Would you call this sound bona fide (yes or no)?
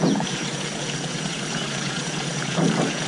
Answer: no